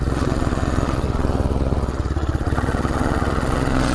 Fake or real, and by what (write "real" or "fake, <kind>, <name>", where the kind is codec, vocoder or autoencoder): fake, vocoder, Vocos